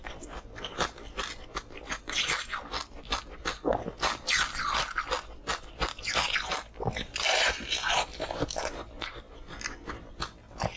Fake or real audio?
real